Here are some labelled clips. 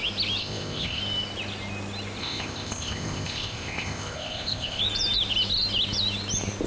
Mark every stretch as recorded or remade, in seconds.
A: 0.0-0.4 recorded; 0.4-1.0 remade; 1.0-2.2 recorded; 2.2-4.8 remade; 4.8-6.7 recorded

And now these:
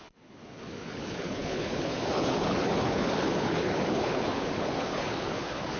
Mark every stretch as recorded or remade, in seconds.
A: 0.0-5.8 remade